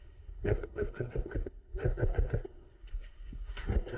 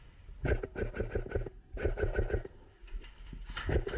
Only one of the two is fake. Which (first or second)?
first